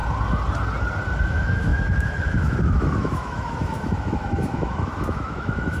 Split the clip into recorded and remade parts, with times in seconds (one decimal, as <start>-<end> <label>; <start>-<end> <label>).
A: 0.0-1.2 recorded; 1.2-5.8 remade